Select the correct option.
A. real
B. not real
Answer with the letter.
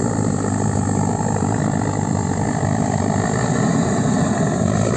A